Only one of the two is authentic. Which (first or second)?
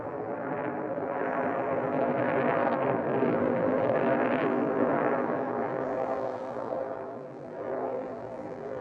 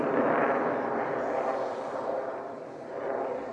second